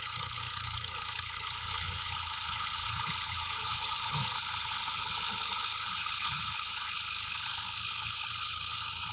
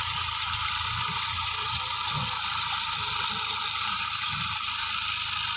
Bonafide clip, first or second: second